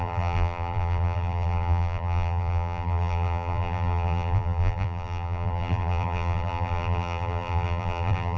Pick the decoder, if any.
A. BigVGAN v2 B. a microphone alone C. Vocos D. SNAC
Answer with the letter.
A